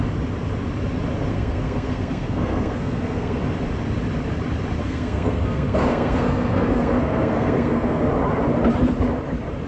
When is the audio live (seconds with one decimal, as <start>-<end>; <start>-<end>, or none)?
0.0-1.3; 3.4-4.8; 8.0-9.7